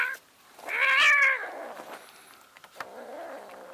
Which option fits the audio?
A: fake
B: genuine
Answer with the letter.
B